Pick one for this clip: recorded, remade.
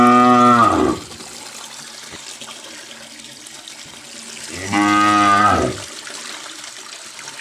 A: recorded